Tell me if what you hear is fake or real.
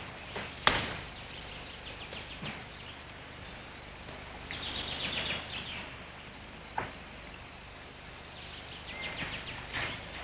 real